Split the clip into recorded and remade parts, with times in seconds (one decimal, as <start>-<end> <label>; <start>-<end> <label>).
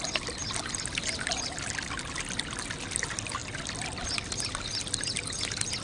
0.0-5.8 recorded